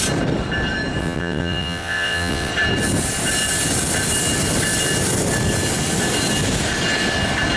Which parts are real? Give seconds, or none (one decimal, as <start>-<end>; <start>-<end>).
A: 0.0-1.0; 2.5-7.6